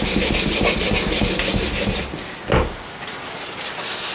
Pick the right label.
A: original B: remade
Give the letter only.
A